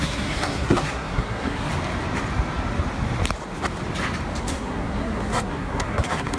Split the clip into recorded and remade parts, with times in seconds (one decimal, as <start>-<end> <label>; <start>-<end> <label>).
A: 0.0-1.7 remade; 1.7-4.4 recorded; 4.4-6.4 remade